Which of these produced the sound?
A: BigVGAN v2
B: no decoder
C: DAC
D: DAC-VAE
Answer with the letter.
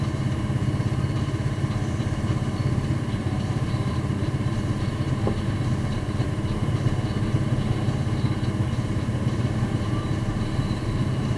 A